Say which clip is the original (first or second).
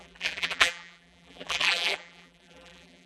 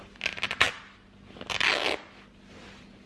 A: second